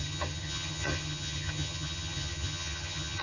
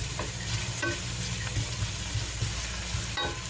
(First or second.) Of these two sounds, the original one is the second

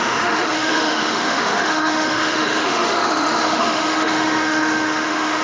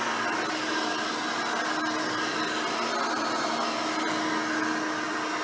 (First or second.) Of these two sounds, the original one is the second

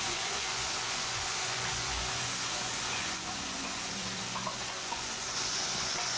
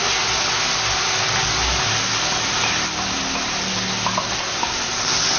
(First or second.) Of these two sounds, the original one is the second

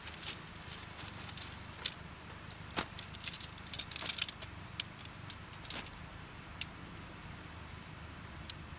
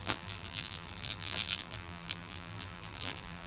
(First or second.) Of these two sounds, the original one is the first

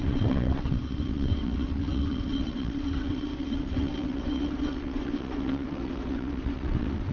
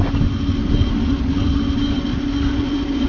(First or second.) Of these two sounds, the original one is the second